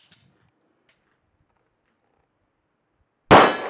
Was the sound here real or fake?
real